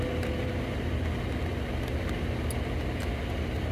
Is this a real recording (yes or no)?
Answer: yes